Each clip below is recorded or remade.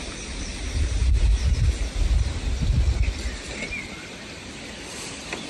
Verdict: recorded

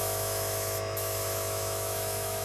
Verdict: remade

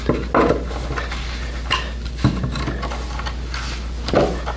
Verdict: recorded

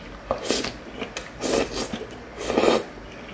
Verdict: recorded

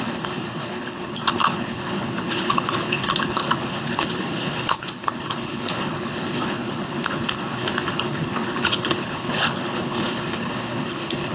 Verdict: remade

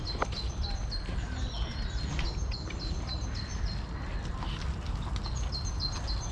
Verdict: recorded